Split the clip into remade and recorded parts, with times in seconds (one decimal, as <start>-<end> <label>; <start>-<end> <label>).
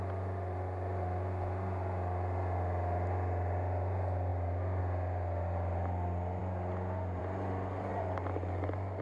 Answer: 0.0-9.0 recorded